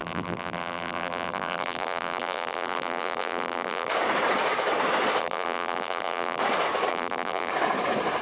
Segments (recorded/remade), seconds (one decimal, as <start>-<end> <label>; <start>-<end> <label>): 0.0-3.9 remade; 3.9-5.2 recorded; 5.2-6.4 remade; 6.4-6.9 recorded; 6.9-7.5 remade; 7.5-8.2 recorded